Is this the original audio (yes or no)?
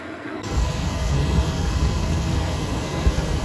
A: no